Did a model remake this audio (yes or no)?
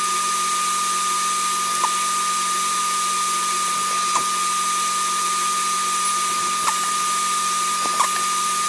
no